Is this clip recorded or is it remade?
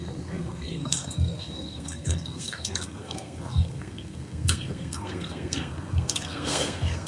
remade